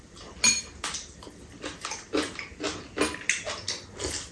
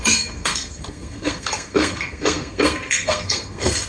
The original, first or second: first